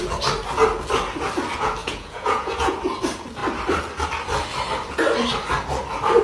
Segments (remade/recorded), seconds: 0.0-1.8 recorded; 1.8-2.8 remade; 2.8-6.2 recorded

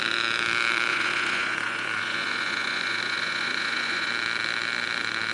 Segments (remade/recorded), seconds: 0.0-0.9 recorded; 0.9-4.1 remade; 4.1-5.3 recorded

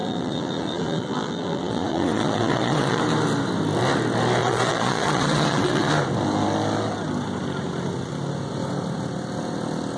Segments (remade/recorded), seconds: 0.0-3.0 remade; 3.0-4.4 recorded; 4.4-5.9 remade; 5.9-10.0 recorded

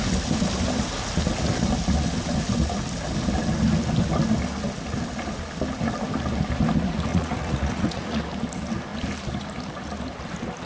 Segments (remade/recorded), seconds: 0.0-7.1 recorded; 7.1-8.2 remade; 8.2-10.7 recorded

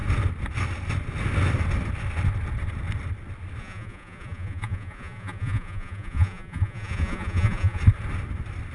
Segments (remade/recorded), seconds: 0.0-3.6 recorded; 3.6-7.8 remade; 7.8-8.7 recorded

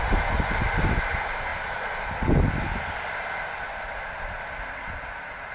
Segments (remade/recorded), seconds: 0.0-5.5 recorded